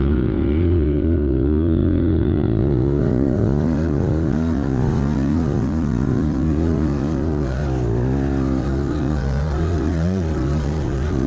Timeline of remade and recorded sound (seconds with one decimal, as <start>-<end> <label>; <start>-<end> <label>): 0.0-7.6 remade; 7.6-8.6 recorded; 8.6-11.3 remade